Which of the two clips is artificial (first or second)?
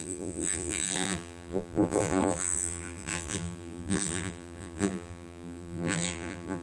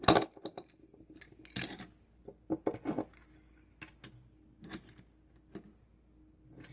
first